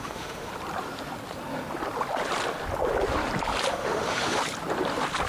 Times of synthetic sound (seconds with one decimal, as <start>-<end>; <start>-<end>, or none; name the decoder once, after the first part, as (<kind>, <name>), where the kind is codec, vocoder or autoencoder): 0.0-0.5 (autoencoder, DAC-VAE); 3.7-4.4